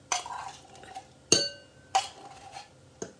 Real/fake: real